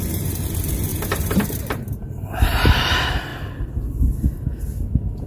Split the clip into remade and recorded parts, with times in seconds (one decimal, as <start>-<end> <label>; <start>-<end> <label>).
0.0-0.9 recorded; 0.9-2.7 remade; 2.7-5.3 recorded

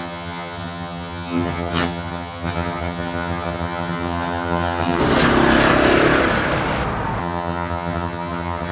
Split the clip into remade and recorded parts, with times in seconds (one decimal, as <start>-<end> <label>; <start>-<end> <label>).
0.0-5.0 remade; 5.0-7.2 recorded; 7.2-8.7 remade

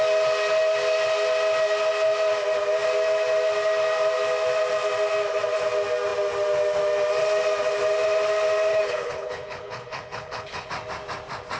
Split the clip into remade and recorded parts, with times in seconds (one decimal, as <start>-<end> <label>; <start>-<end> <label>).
0.0-8.7 recorded; 8.7-10.7 remade; 10.7-11.6 recorded

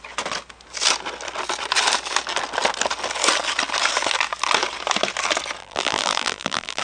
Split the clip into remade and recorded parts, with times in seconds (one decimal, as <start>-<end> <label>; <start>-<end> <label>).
0.0-5.6 recorded; 5.6-6.8 remade

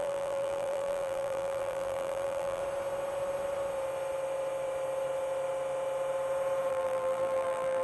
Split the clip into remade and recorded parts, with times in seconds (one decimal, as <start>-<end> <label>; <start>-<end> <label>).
0.0-2.6 remade; 2.6-6.7 recorded; 6.7-7.8 remade